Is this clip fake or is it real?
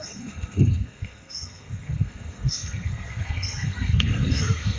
fake